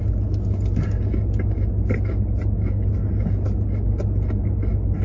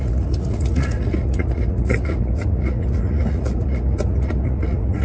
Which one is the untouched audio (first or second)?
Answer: first